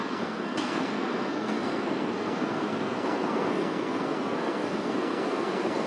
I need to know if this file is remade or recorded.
remade